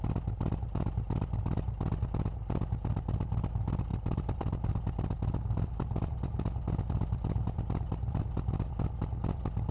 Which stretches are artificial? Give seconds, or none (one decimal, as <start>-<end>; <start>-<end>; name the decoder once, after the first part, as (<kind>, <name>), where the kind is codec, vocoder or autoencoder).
3.9-8.7 (vocoder, BigVGAN v2)